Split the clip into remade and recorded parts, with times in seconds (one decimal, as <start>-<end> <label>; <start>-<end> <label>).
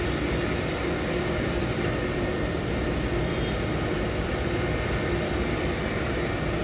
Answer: 0.0-3.3 remade; 3.3-6.6 recorded